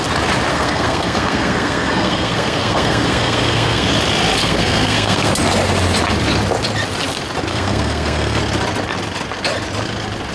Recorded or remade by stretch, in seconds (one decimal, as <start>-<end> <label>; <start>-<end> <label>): 0.0-0.5 recorded; 0.5-3.9 remade; 3.9-4.4 recorded; 4.4-5.3 remade; 5.3-7.5 recorded; 7.5-8.4 remade; 8.4-10.3 recorded

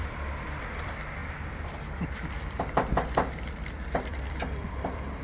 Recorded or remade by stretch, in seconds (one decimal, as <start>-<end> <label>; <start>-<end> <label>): 0.0-1.2 remade; 1.2-3.5 recorded; 3.5-5.2 remade

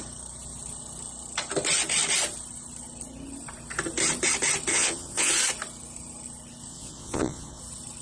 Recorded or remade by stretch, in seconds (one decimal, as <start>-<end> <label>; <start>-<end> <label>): 0.0-4.7 recorded; 4.7-5.3 remade; 5.3-6.7 recorded; 6.7-7.6 remade; 7.6-8.0 recorded

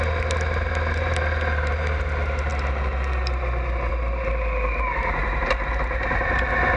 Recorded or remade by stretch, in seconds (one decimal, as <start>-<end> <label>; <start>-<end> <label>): 0.0-6.8 recorded

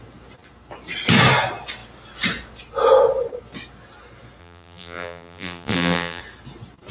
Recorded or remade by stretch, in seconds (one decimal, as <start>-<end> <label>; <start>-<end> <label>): 0.0-4.4 recorded; 4.4-6.2 remade; 6.2-6.9 recorded

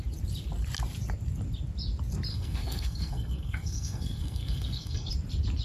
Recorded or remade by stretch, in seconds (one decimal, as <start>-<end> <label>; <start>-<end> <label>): 0.0-2.3 recorded; 2.3-5.1 remade; 5.1-5.6 recorded

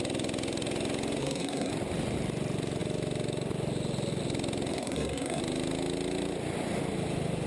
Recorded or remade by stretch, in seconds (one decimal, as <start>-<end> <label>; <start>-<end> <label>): 0.0-1.2 recorded; 1.2-1.7 remade; 1.7-4.7 recorded; 4.7-5.4 remade; 5.4-7.5 recorded